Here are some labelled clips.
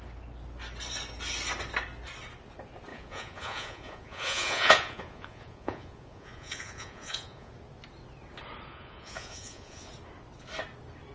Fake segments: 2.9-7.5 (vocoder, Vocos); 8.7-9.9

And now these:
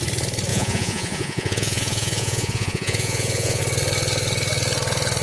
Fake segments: 0.5-3.6 (vocoder, Vocos)